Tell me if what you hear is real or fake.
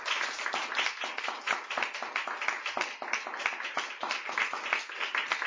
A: real